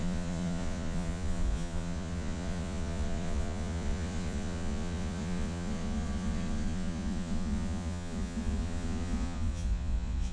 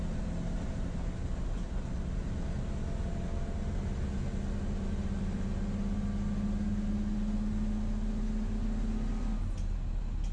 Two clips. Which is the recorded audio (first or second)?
second